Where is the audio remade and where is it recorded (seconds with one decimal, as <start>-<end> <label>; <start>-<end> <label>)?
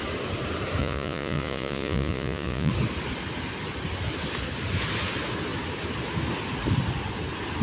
0.0-0.8 recorded; 0.8-2.7 remade; 2.7-7.6 recorded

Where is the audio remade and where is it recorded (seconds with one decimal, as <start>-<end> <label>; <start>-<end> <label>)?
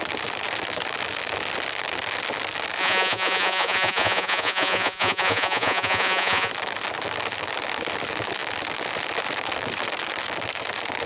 0.0-2.8 recorded; 2.8-6.5 remade; 6.5-11.1 recorded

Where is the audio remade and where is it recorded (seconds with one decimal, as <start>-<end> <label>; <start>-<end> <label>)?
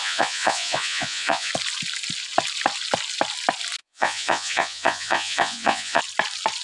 0.0-1.5 remade; 1.5-3.8 recorded; 3.8-6.0 remade; 6.0-6.6 recorded